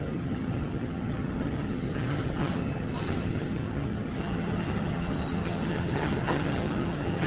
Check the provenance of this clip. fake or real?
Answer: fake